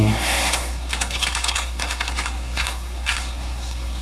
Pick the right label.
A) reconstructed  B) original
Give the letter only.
A